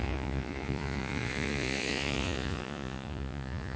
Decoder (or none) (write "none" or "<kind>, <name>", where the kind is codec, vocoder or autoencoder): vocoder, Vocos